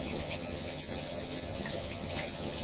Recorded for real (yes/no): no